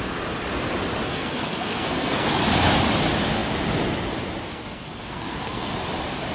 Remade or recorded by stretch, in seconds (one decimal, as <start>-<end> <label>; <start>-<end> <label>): 0.0-1.0 recorded; 1.0-2.3 remade; 2.3-4.5 recorded; 4.5-5.7 remade; 5.7-6.3 recorded